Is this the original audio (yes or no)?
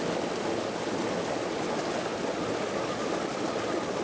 yes